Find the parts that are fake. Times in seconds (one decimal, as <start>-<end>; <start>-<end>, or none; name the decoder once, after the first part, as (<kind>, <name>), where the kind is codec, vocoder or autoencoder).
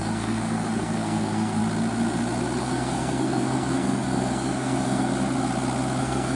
0.0-1.6 (codec, SNAC); 2.6-5.1; 6.0-6.4